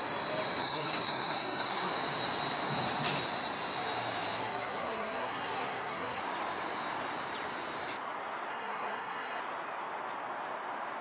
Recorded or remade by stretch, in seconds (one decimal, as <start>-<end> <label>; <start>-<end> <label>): 0.0-0.6 recorded; 0.6-1.9 remade; 1.9-4.4 recorded; 4.4-6.2 remade; 6.2-8.5 recorded; 8.5-9.4 remade; 9.4-11.0 recorded